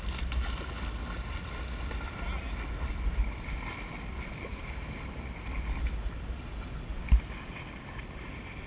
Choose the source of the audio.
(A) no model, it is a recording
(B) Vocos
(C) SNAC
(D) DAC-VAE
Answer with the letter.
A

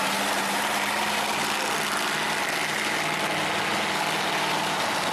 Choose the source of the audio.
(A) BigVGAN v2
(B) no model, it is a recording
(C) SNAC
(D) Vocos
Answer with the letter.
B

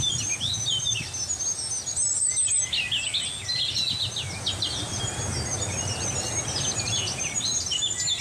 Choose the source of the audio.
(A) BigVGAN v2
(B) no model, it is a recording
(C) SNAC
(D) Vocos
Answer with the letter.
B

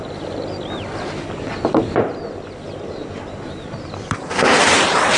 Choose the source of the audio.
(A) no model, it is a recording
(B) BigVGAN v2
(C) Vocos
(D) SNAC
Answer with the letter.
B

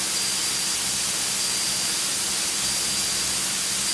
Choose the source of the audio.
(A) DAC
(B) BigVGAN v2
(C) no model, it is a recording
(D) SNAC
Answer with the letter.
C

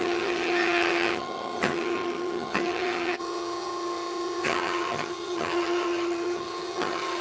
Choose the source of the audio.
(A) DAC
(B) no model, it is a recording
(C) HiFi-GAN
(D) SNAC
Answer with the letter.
C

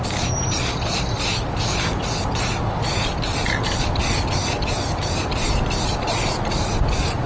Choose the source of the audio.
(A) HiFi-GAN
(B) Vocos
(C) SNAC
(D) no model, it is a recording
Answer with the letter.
D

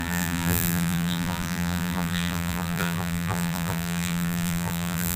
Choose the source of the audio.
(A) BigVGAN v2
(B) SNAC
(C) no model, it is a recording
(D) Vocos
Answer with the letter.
A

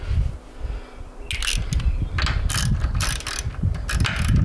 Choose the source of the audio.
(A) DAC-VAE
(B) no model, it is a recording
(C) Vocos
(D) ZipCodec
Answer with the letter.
B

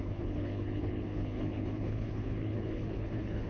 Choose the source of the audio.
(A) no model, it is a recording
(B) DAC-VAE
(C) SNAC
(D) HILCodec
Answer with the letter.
D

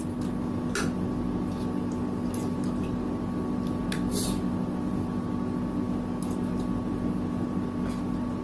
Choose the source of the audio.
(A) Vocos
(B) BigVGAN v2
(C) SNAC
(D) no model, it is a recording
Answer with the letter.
D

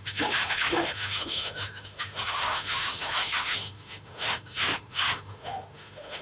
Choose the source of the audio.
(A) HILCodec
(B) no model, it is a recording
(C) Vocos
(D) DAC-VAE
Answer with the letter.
D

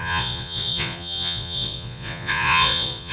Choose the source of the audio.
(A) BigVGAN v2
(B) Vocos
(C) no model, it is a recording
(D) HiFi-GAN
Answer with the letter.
B